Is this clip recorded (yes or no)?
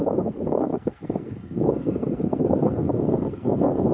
no